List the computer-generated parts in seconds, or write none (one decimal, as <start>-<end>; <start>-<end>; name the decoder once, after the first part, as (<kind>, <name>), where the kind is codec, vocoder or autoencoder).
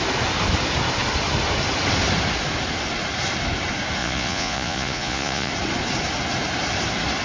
4.0-5.5 (vocoder, Vocos)